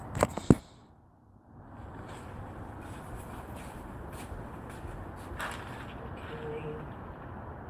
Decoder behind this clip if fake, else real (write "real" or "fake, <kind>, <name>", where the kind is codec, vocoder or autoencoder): real